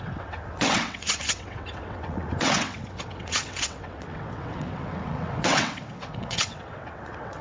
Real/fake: fake